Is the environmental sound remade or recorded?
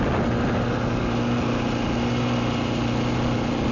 recorded